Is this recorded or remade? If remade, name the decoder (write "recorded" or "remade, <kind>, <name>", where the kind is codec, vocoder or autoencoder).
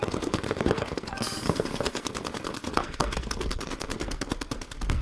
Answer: remade, codec, SNAC